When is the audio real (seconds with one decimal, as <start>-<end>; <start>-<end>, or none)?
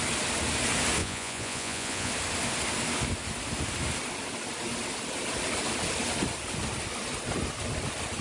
0.0-1.0; 2.1-8.2